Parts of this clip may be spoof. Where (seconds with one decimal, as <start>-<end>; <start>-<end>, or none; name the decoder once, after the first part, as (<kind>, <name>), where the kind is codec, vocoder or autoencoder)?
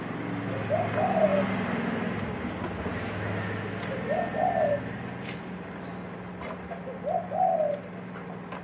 none